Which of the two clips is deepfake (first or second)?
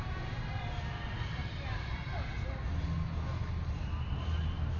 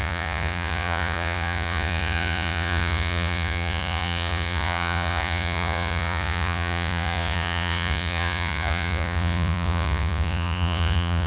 second